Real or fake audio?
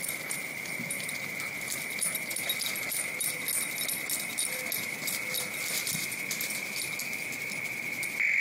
real